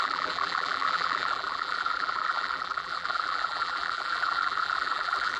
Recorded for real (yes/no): no